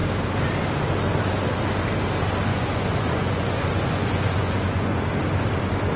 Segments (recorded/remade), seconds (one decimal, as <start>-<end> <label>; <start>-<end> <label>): 0.0-2.5 recorded; 2.5-5.0 remade; 5.0-6.0 recorded